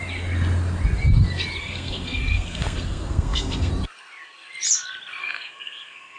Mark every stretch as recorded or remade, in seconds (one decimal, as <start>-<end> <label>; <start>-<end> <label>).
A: 0.0-1.6 recorded; 1.6-3.7 remade; 3.7-5.2 recorded; 5.2-6.2 remade